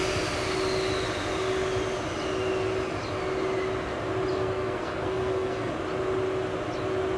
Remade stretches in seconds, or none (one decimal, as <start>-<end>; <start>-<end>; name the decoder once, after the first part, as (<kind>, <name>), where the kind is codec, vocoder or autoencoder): 4.3-5.7 (codec, SNAC)